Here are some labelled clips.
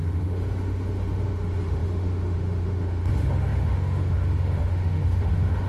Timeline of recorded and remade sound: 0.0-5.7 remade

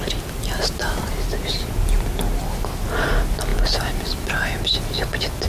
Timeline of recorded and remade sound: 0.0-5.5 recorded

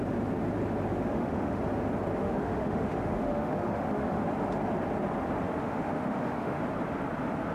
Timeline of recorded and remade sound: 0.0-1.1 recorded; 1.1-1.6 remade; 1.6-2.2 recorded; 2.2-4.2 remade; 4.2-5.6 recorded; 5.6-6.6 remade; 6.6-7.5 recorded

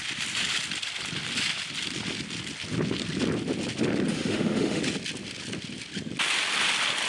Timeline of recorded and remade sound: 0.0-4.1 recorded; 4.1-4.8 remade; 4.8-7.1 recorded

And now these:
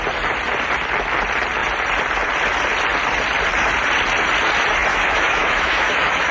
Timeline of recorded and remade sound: 0.0-4.9 recorded; 4.9-6.3 remade